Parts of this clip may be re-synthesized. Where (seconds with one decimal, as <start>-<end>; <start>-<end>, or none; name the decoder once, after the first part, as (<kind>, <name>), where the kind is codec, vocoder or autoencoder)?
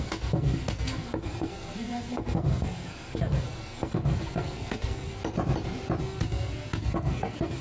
0.0-5.2 (codec, SNAC); 6.0-7.6